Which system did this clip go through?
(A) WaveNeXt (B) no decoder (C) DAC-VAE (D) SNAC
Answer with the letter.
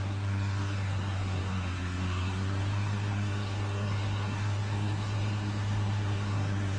D